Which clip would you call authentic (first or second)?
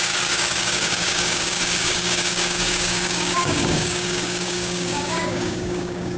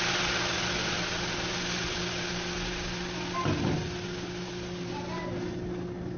second